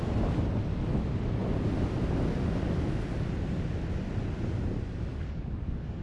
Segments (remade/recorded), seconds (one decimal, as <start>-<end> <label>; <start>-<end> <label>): 0.0-5.1 recorded; 5.1-6.0 remade